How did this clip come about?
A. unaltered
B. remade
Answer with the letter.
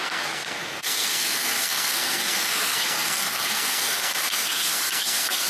B